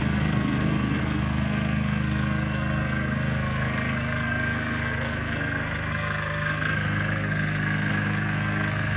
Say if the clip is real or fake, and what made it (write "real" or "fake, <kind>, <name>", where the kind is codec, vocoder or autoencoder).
fake, codec, SNAC